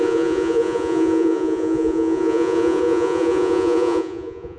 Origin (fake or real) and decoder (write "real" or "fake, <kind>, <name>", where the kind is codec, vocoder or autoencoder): fake, vocoder, Vocos